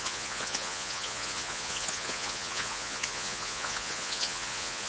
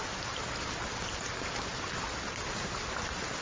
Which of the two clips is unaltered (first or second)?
second